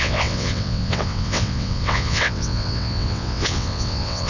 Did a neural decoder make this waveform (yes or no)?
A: yes